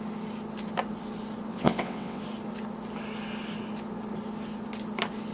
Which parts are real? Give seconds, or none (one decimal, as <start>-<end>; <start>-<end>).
0.0-1.5; 2.2-5.3